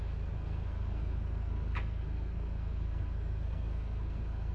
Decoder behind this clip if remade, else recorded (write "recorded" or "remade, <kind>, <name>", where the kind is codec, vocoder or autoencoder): remade, codec, SNAC